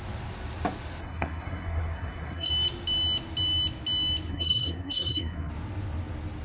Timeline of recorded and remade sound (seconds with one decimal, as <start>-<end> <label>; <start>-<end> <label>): 0.0-1.0 recorded; 1.0-2.5 remade; 2.5-4.3 recorded; 4.3-5.5 remade; 5.5-6.4 recorded